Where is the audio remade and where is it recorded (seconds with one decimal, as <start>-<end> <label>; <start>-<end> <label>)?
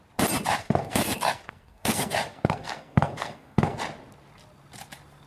0.0-0.6 recorded; 0.6-3.8 remade; 3.8-5.3 recorded